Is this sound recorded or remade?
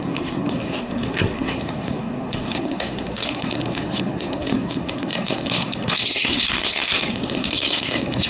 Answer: remade